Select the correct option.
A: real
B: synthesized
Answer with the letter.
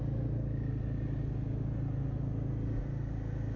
A